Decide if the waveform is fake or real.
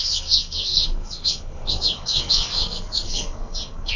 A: fake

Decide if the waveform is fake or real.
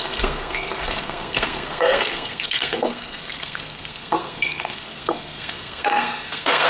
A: fake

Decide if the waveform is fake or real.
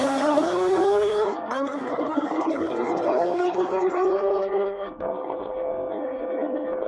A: fake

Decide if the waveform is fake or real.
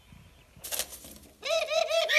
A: real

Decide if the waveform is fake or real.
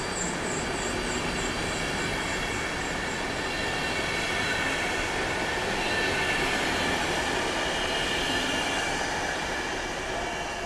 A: real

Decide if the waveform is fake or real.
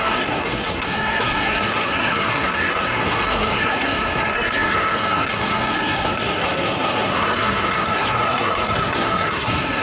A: fake